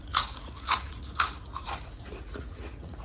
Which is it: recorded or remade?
remade